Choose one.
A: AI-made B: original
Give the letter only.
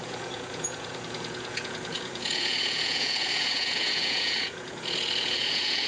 A